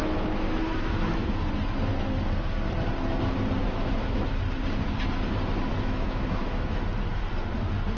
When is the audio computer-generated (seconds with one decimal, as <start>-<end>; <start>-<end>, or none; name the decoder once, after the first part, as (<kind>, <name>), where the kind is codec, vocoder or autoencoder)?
0.0-1.3 (autoencoder, DAC-VAE); 3.6-4.2; 5.7-6.8